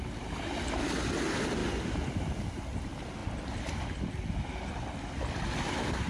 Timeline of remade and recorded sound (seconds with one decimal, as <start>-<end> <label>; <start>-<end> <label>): 0.0-3.2 recorded; 3.2-4.0 remade; 4.0-6.1 recorded